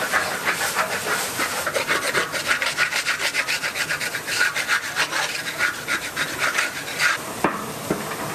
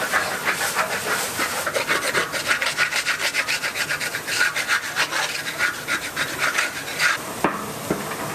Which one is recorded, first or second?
second